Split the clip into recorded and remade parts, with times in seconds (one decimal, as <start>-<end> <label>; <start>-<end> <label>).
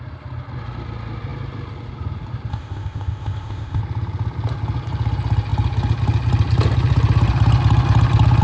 0.0-2.5 recorded; 2.5-3.8 remade; 3.8-8.4 recorded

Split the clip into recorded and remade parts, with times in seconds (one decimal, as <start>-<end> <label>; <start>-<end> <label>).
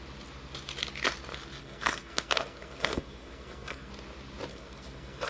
0.0-1.6 recorded; 1.6-3.9 remade; 3.9-4.5 recorded; 4.5-5.3 remade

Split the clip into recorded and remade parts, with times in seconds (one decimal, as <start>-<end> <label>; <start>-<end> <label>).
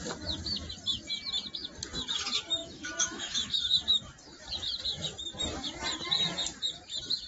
0.0-2.6 recorded; 2.6-3.7 remade; 3.7-7.3 recorded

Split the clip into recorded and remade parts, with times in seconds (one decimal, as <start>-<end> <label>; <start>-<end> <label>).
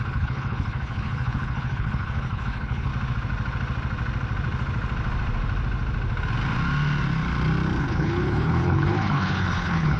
0.0-2.9 remade; 2.9-7.8 recorded; 7.8-10.0 remade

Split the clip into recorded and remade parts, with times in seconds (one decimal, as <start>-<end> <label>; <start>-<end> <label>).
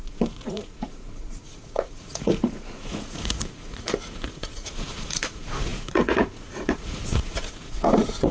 0.0-8.3 remade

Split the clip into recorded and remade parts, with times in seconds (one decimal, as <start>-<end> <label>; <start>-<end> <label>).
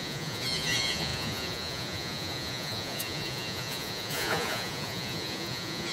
0.0-5.9 remade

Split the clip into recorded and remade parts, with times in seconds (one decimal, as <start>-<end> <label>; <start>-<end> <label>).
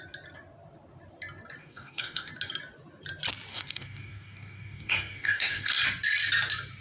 0.0-1.6 recorded; 1.6-2.3 remade; 2.3-3.5 recorded; 3.5-5.8 remade; 5.8-6.8 recorded